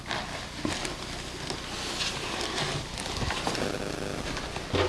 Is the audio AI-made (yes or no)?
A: no